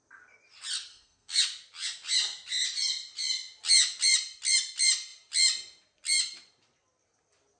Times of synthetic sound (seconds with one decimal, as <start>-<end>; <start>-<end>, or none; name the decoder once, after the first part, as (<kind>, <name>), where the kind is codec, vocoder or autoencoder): 0.9-1.4 (codec, SNAC)